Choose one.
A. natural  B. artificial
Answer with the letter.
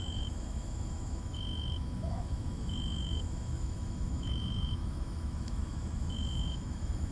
B